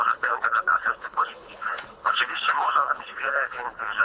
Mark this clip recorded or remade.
remade